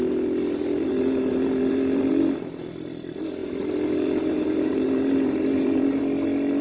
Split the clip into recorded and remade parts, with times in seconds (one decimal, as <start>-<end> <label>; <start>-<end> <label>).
0.0-0.7 recorded; 0.7-2.2 remade; 2.2-3.4 recorded; 3.4-6.0 remade; 6.0-6.6 recorded